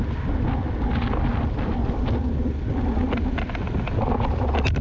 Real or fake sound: real